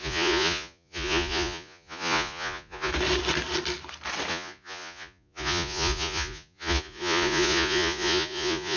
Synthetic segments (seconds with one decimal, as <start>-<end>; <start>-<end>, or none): 0.0-2.9; 4.3-8.8